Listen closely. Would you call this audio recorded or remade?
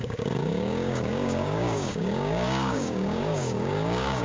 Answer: remade